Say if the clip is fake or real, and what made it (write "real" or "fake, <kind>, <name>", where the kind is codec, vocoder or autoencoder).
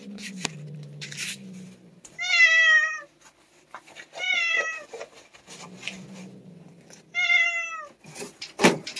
real